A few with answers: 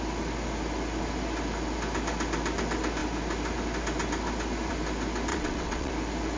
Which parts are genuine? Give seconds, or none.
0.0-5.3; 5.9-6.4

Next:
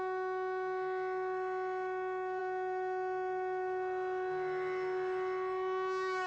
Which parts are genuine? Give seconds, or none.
0.0-6.3

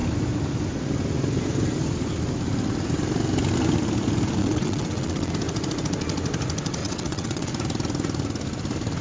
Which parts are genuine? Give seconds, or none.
0.0-4.4; 5.3-6.8; 7.5-9.0

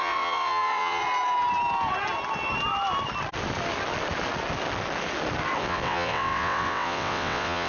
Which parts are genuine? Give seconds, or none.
1.0-5.6

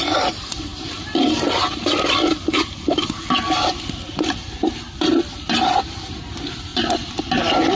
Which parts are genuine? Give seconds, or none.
0.0-7.8

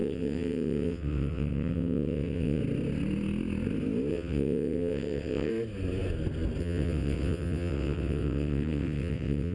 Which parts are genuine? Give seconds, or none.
2.6-4.1; 5.5-6.6

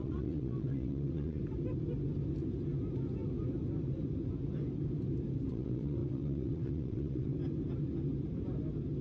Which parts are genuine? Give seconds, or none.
1.4-5.5; 7.3-9.0